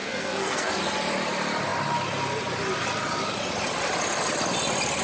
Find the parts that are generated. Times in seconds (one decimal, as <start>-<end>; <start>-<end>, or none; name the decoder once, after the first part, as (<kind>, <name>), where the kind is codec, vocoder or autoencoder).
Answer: 0.0-0.7 (codec, SNAC)